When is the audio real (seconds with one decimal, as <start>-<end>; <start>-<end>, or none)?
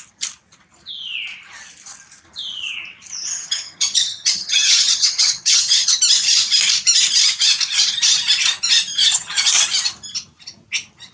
0.0-3.3; 6.0-8.9; 9.5-11.1